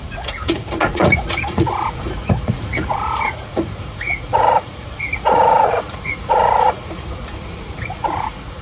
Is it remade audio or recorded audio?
remade